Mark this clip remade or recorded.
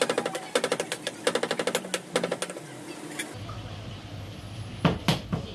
recorded